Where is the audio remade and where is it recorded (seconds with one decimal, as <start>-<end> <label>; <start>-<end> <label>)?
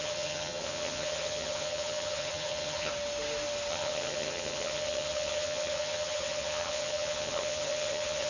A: 0.0-2.9 remade; 2.9-3.7 recorded; 3.7-8.3 remade